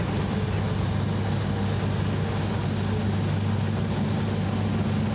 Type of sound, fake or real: real